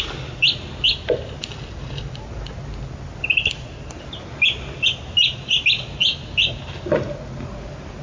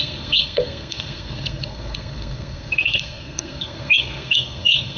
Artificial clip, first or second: second